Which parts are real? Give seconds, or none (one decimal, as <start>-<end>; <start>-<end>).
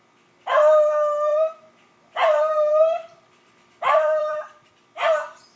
0.0-1.3; 4.7-5.6